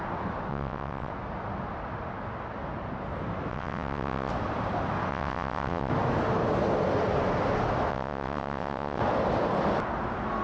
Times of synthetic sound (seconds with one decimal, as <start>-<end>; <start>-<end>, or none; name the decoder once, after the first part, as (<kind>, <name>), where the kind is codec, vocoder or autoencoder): 0.5-1.1 (vocoder, WaveNeXt); 3.5-4.3; 5.1-5.9; 7.9-9.0